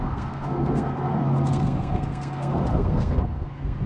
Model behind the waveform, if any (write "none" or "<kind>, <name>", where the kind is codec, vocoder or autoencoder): codec, SNAC